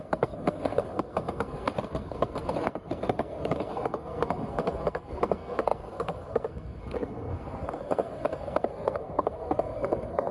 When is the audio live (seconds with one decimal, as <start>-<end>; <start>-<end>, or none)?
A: none